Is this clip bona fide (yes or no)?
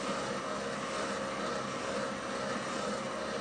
yes